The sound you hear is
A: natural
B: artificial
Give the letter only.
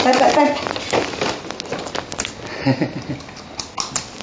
A